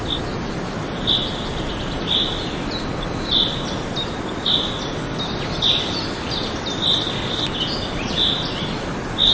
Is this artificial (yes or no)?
no